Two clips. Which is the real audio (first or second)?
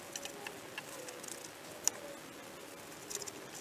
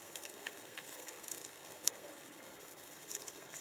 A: first